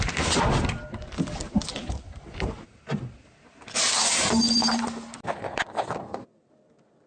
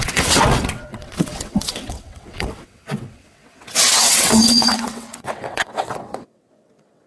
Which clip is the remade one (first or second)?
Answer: second